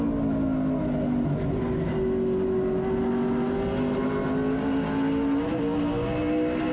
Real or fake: real